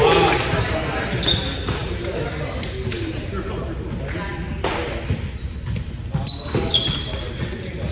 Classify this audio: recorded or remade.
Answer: recorded